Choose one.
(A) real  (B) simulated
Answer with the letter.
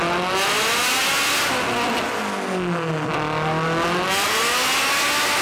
A